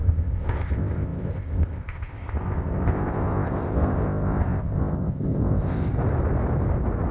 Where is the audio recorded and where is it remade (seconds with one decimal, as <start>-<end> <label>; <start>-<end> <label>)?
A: 0.0-5.9 remade; 5.9-7.1 recorded